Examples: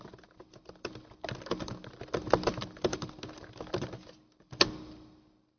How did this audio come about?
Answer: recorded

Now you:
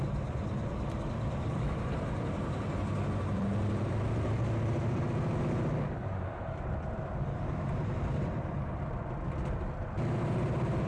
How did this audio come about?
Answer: remade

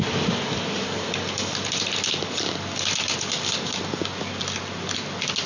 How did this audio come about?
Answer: recorded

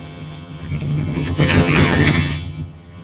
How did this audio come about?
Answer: remade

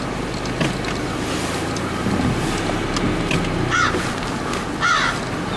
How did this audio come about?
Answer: recorded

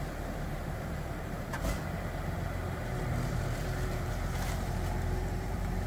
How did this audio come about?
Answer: remade